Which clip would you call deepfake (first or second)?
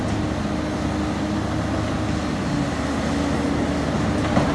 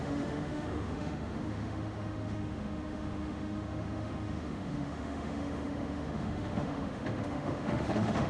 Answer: second